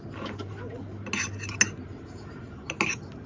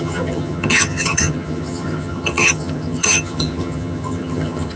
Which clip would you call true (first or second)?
first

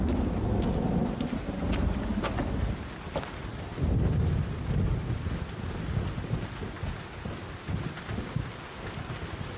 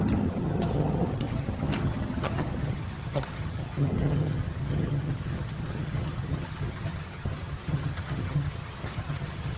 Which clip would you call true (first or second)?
first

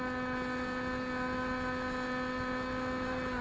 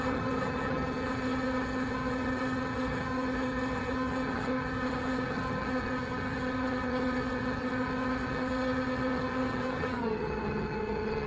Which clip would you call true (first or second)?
first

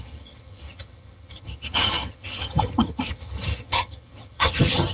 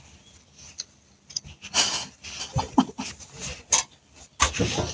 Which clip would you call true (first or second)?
second